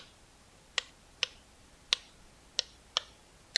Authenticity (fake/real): real